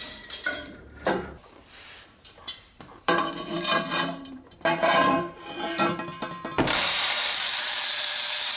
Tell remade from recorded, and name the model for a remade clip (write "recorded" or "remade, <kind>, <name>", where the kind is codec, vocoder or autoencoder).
remade, vocoder, BigVGAN v2